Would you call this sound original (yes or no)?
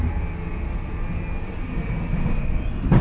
yes